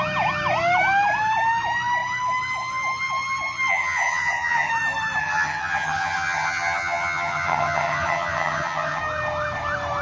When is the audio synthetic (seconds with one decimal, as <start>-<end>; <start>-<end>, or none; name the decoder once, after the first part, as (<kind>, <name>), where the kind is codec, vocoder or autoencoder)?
3.7-4.7 (vocoder, HiFi-GAN); 5.2-9.0